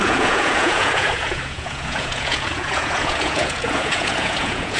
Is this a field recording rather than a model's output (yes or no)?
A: no